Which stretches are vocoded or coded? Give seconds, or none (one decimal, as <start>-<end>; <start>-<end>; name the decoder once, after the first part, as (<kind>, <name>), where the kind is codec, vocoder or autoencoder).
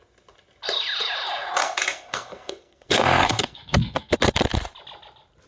1.6-4.1 (codec, SNAC)